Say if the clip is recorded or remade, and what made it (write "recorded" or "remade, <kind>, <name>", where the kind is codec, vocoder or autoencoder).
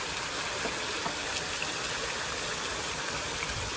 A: recorded